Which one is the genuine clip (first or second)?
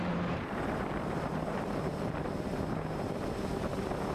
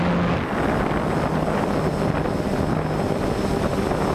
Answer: second